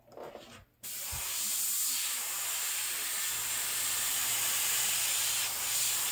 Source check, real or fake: real